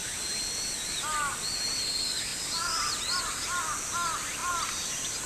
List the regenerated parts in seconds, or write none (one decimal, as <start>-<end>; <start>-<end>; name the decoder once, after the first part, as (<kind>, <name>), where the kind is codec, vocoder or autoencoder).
none